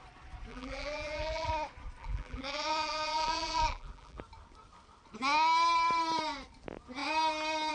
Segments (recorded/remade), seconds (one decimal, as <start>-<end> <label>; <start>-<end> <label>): 0.0-0.5 recorded; 0.5-1.5 remade; 1.5-2.0 recorded; 2.0-4.2 remade; 4.2-7.7 recorded

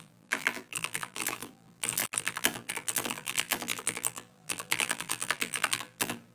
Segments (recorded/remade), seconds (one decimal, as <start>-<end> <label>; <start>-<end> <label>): 0.0-6.3 remade